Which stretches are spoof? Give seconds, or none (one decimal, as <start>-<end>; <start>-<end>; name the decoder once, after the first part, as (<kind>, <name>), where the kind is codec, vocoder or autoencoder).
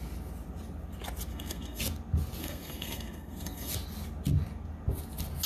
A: 1.3-1.8 (codec, SNAC); 2.4-3.7